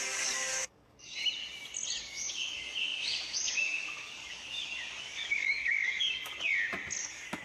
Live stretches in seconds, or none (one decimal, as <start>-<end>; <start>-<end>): 1.2-2.0; 6.5-7.0